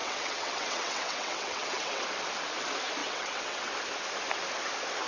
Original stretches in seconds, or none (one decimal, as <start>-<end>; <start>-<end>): 2.0-3.0; 3.7-5.1